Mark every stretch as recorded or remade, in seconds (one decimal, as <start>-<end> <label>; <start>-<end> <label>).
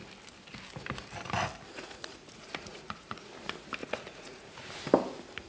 0.0-1.7 recorded; 1.7-3.3 remade; 3.3-3.8 recorded; 3.8-4.7 remade; 4.7-5.5 recorded